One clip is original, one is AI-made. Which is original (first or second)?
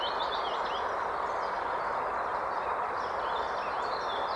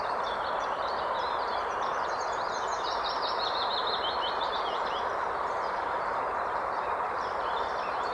first